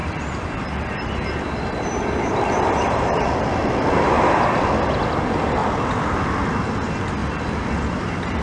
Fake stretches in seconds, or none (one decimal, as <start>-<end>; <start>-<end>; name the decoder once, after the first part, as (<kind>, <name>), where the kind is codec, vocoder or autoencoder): 0.0-4.6 (vocoder, BigVGAN v2); 5.6-6.2; 7.2-8.4